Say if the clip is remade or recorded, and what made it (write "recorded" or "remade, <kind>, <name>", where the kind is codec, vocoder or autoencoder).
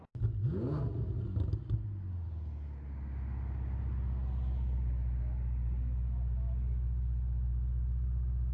recorded